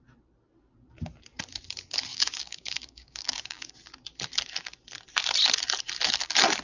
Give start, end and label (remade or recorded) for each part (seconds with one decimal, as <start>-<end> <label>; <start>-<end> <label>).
0.0-2.1 recorded; 2.1-3.7 remade; 3.7-6.6 recorded